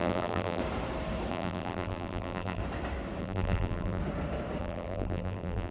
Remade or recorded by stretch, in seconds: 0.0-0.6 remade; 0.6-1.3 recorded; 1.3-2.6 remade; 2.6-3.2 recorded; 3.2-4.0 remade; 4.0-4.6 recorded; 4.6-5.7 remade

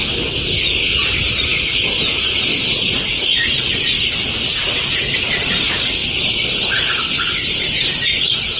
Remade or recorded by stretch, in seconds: 0.0-8.6 recorded